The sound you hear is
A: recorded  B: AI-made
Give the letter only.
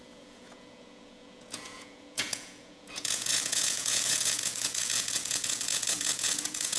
B